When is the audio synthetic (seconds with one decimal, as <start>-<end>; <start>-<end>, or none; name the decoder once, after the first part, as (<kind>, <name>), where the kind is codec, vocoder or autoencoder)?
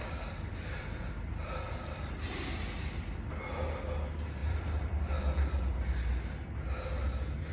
0.0-3.3 (vocoder, BigVGAN v2); 4.4-5.2